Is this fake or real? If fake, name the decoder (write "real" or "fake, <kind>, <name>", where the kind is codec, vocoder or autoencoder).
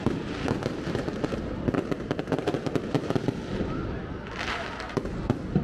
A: real